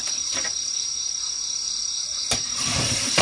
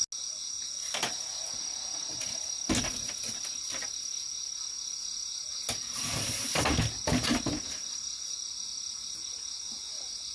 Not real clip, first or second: first